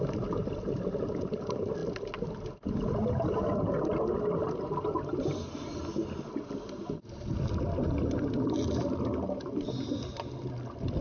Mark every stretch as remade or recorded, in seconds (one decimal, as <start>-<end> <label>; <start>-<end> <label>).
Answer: 0.0-11.0 recorded